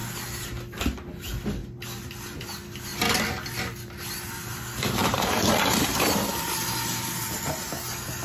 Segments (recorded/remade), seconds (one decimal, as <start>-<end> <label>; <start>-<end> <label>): 0.0-1.6 recorded; 1.6-2.1 remade; 2.1-5.0 recorded; 5.0-6.3 remade; 6.3-8.2 recorded